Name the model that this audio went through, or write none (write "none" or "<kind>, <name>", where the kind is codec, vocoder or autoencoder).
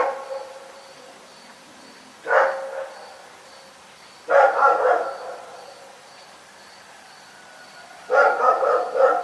none